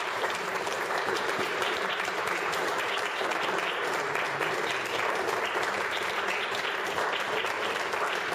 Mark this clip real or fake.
fake